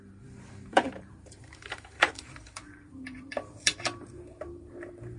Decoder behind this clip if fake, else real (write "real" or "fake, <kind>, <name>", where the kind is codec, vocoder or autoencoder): fake, vocoder, BigVGAN v2